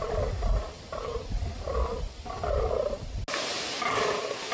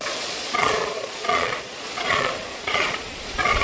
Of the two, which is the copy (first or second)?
second